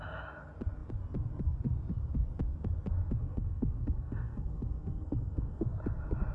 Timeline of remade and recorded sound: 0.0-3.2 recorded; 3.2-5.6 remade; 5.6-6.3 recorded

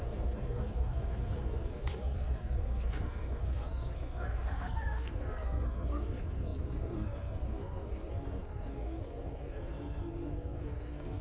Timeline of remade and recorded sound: 0.0-11.2 remade

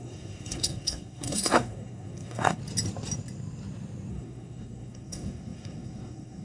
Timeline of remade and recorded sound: 0.0-2.6 remade; 2.6-4.1 recorded; 4.1-6.4 remade